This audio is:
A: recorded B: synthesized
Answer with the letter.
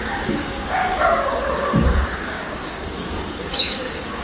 B